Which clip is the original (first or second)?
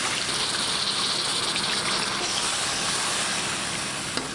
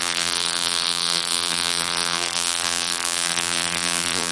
first